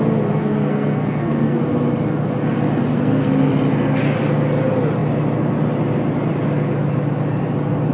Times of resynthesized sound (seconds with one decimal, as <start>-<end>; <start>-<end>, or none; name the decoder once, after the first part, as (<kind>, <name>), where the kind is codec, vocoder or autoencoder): 0.4-1.6 (codec, SNAC); 2.9-3.5